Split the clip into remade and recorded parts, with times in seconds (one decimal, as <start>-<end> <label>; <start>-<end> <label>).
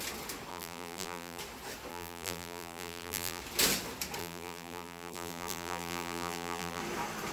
0.0-0.5 recorded; 0.5-1.4 remade; 1.4-1.9 recorded; 1.9-3.4 remade; 3.4-4.2 recorded; 4.2-6.8 remade; 6.8-7.3 recorded